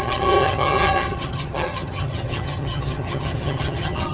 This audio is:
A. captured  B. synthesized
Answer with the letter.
B